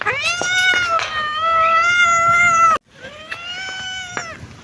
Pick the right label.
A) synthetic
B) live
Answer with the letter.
B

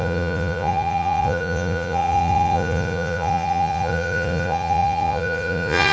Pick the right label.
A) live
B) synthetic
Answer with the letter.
B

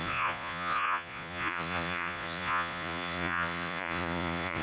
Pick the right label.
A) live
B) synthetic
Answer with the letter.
B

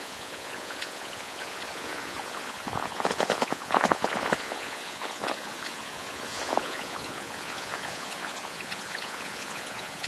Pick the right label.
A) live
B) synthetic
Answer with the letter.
B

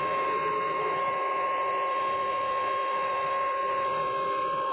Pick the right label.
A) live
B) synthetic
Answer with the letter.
A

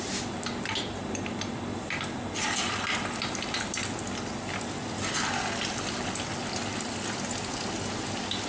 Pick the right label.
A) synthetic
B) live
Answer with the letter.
B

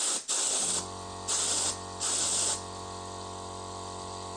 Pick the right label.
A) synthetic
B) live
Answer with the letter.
B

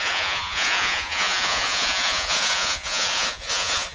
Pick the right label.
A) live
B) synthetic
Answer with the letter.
B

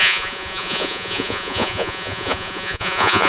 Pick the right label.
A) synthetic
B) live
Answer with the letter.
A